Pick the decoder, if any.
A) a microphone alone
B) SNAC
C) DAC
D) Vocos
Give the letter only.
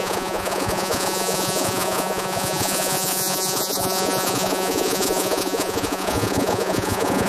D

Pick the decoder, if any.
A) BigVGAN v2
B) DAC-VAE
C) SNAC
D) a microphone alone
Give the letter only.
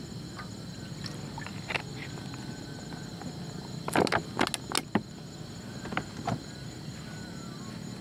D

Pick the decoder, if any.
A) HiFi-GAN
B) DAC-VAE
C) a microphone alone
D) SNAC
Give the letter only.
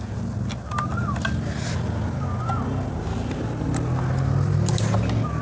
C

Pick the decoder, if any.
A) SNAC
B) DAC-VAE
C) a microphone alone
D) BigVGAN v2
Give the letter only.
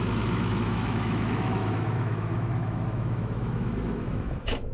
B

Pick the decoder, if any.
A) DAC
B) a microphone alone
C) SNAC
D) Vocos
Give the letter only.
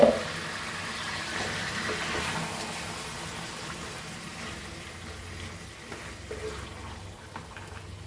B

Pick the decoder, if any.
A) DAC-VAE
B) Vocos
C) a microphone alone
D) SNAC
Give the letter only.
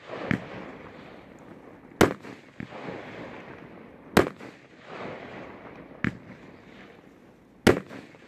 C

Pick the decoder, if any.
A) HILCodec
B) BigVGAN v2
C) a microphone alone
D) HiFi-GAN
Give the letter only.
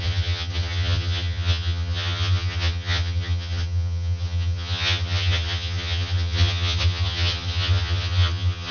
D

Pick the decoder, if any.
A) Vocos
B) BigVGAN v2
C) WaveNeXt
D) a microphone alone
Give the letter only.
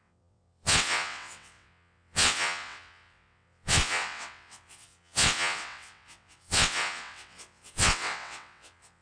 C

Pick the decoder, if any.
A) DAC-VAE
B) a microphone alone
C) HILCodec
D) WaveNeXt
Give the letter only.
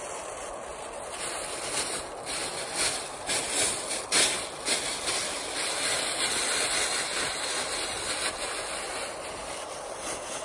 B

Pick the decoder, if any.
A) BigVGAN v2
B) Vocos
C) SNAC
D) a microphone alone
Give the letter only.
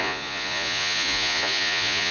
B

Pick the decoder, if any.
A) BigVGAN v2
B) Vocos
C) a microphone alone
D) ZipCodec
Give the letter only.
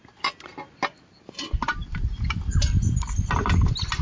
C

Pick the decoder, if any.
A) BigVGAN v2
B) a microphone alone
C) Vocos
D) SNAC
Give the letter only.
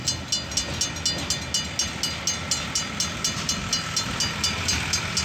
B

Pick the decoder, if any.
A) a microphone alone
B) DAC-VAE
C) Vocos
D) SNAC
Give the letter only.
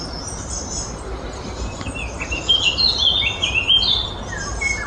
A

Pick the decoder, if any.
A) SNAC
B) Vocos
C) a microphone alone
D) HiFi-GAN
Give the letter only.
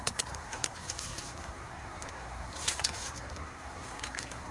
A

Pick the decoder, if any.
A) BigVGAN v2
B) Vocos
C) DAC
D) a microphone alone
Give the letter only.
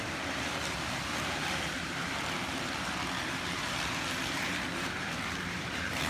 A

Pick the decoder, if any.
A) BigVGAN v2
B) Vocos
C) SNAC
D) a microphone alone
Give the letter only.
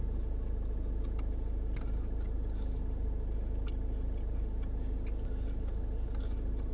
D